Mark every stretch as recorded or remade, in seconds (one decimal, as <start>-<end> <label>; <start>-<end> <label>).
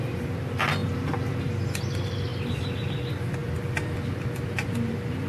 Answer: 0.0-5.3 recorded